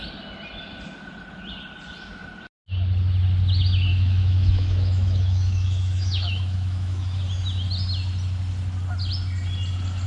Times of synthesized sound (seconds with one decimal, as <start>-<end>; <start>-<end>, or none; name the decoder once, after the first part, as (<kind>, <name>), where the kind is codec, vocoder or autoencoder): 3.9-7.2 (autoencoder, DAC-VAE)